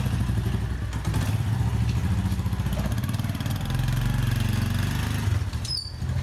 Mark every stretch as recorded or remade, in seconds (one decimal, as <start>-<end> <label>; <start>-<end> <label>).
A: 0.0-6.2 recorded